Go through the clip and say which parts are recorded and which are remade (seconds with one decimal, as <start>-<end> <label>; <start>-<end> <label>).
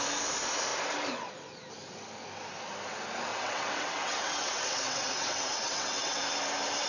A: 0.0-3.3 recorded; 3.3-6.2 remade; 6.2-6.9 recorded